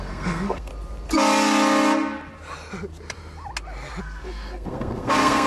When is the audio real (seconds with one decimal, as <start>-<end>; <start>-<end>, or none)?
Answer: 0.7-4.0